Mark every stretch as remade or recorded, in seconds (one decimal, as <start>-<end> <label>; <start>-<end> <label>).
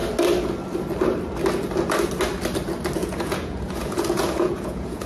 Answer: 0.0-3.0 recorded; 3.0-5.1 remade